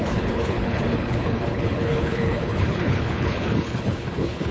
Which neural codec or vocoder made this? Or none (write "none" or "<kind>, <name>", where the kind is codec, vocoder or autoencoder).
codec, HILCodec